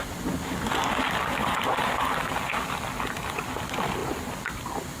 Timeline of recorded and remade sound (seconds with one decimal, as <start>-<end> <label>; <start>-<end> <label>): 0.0-1.4 recorded; 1.4-2.1 remade; 2.1-5.0 recorded